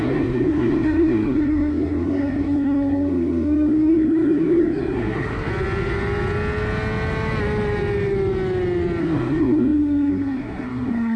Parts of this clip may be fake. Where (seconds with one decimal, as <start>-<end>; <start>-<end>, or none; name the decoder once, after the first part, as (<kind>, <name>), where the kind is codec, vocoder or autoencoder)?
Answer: 0.0-5.5 (codec, SNAC); 9.0-11.2